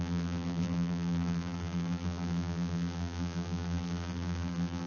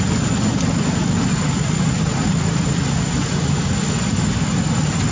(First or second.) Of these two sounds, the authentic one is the second